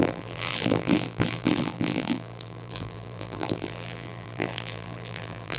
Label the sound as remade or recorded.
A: remade